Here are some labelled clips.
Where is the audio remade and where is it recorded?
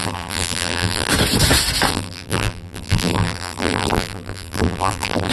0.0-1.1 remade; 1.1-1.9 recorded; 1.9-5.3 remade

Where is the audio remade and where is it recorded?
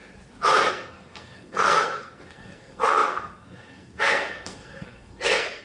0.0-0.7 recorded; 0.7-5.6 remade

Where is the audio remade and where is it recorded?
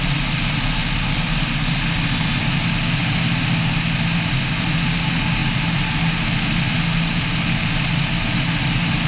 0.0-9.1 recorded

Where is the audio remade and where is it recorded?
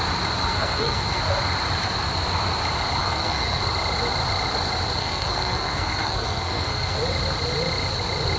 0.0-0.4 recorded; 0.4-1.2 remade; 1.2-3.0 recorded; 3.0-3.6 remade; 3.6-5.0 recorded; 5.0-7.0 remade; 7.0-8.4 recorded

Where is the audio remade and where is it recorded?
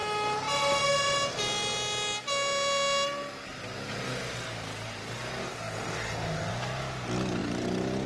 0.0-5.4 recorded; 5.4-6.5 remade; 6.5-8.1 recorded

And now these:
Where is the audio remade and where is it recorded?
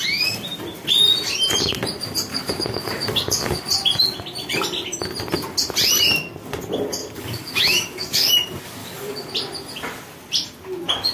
0.0-2.3 recorded; 2.3-3.7 remade; 3.7-7.0 recorded; 7.0-8.3 remade; 8.3-8.8 recorded; 8.8-9.3 remade; 9.3-11.1 recorded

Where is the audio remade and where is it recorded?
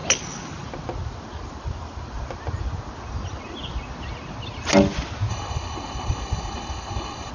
0.0-5.3 recorded; 5.3-7.3 remade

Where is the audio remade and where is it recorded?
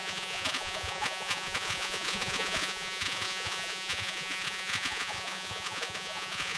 0.0-6.6 remade